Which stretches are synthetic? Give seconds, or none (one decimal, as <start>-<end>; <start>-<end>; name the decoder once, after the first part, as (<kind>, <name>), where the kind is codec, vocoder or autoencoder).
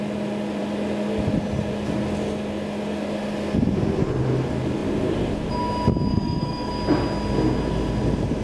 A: 6.1-6.7 (codec, SNAC)